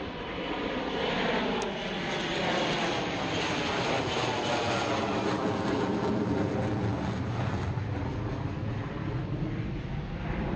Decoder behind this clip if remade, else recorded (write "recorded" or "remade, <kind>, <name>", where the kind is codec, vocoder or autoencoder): recorded